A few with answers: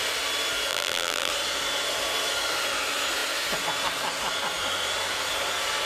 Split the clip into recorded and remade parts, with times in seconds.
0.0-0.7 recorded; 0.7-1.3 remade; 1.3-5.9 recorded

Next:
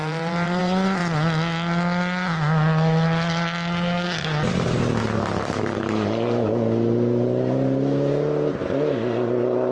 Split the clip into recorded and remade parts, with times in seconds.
0.0-1.0 remade; 1.0-4.5 recorded; 4.5-8.6 remade; 8.6-9.7 recorded